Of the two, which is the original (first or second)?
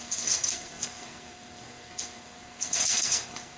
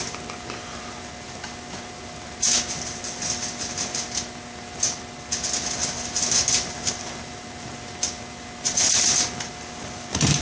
second